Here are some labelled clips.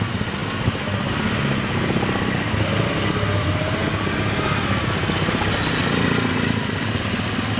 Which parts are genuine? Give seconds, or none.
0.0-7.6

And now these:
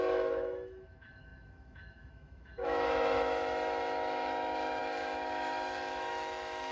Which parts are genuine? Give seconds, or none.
none

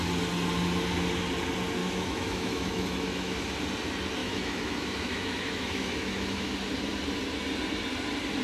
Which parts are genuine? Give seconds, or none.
0.0-1.8; 3.4-4.2; 6.5-8.4

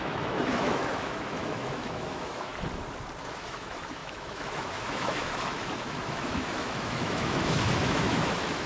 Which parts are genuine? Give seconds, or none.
2.5-3.2

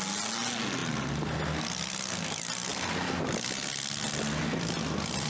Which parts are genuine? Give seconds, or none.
0.0-5.3

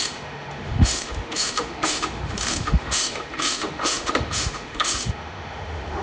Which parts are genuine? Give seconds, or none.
none

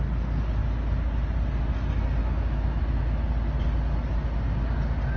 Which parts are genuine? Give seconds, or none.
0.0-2.2; 3.2-5.2

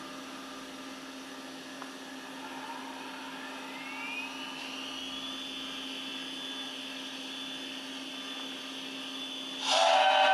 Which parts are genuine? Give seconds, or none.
0.0-10.3